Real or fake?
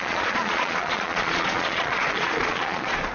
fake